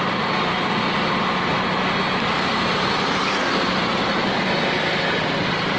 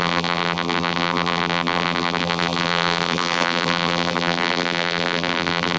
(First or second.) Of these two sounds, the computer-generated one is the second